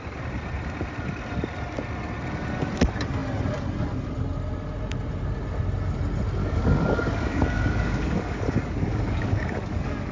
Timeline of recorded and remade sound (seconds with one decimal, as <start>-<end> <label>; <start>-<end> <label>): 0.0-6.4 recorded; 6.4-10.1 remade